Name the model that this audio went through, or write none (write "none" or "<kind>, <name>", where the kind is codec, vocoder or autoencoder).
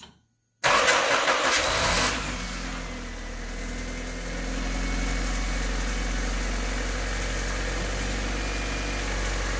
none